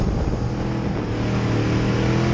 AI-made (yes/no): no